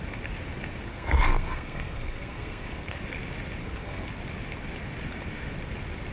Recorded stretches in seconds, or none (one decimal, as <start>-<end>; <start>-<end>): 0.0-0.9; 3.0-3.6; 4.1-6.1